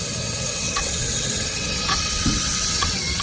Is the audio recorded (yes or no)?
no